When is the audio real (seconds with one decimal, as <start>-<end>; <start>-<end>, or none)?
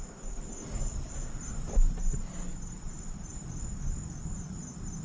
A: 0.6-2.5; 3.3-5.0